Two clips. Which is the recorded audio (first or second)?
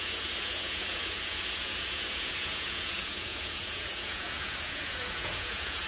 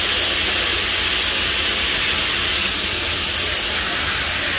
second